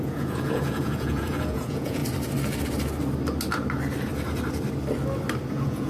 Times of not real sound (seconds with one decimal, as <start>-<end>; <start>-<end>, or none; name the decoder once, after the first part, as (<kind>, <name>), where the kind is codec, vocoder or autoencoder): 0.0-2.0 (vocoder, Vocos); 5.5-5.9

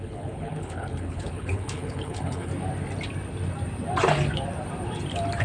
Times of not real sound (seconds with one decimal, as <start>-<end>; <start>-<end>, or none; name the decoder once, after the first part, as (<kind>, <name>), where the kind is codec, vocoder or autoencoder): 0.0-2.5 (codec, HILCodec)

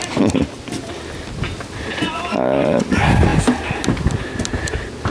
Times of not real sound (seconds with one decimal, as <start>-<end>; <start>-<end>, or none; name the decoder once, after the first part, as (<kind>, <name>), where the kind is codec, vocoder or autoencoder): none